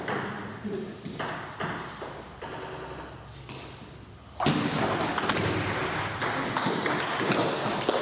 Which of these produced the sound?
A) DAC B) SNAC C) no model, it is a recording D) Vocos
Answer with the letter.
C